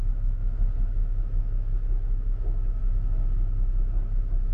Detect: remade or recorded remade